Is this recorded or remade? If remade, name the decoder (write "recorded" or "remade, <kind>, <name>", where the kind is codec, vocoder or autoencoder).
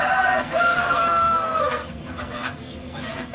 remade, codec, SNAC